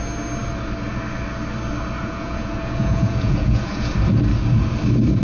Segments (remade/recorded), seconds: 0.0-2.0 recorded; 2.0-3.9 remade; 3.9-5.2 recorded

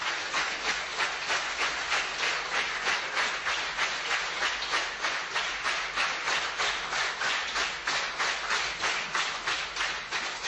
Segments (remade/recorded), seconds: 0.0-10.5 remade

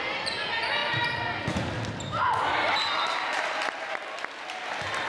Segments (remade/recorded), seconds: 0.0-5.1 recorded

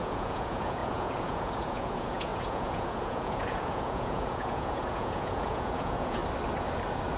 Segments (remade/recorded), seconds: 0.0-6.2 remade; 6.2-7.2 recorded

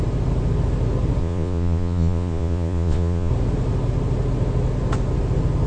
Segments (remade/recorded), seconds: 0.0-1.2 recorded; 1.2-3.3 remade; 3.3-5.7 recorded